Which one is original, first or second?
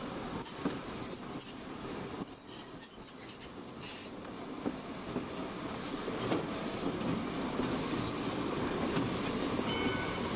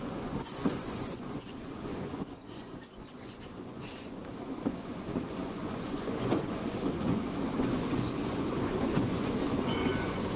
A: first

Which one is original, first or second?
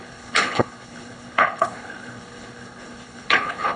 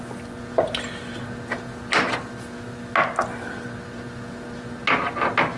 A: second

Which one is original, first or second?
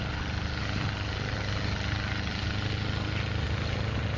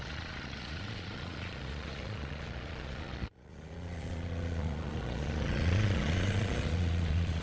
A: first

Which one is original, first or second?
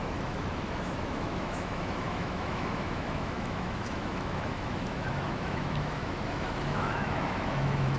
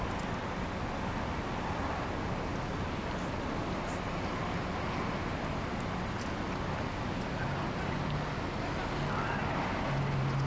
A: second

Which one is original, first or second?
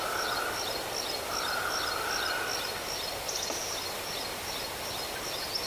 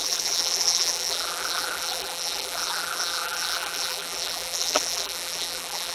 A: first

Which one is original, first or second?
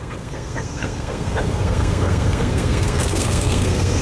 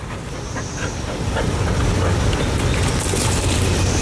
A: second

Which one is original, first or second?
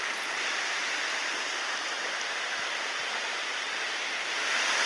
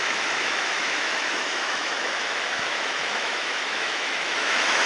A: first